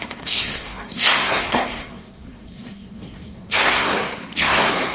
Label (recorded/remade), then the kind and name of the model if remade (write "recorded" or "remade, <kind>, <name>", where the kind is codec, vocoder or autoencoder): remade, codec, SNAC